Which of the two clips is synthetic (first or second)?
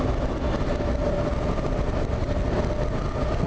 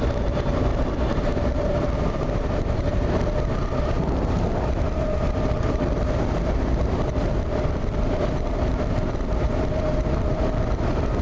second